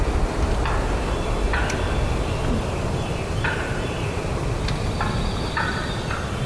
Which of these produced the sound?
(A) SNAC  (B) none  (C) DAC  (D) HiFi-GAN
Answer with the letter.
B